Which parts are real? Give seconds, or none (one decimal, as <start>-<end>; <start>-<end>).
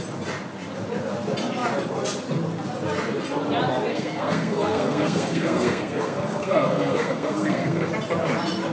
0.0-3.9; 7.9-8.7